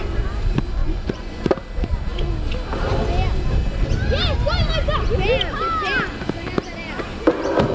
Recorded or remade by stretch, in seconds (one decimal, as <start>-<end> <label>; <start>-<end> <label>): 0.0-0.8 recorded; 0.8-1.4 remade; 1.4-7.7 recorded